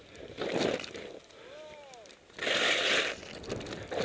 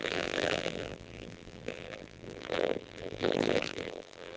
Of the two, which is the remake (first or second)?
second